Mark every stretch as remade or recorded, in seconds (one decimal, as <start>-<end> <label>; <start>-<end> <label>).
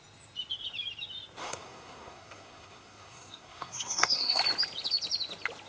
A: 0.0-1.4 recorded; 1.4-4.4 remade; 4.4-5.7 recorded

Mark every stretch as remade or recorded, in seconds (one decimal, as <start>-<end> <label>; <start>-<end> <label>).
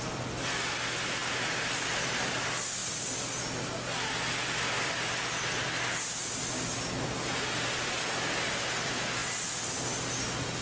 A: 0.0-9.2 recorded; 9.2-10.0 remade; 10.0-10.6 recorded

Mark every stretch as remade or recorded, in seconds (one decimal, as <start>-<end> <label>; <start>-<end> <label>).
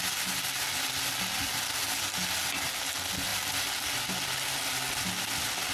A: 0.0-3.3 recorded; 3.3-3.8 remade; 3.8-5.7 recorded